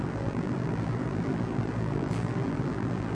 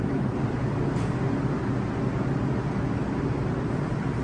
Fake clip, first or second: first